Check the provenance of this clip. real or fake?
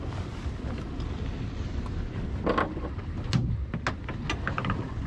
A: real